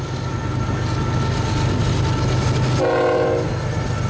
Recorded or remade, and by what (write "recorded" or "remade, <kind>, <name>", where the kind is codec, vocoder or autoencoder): recorded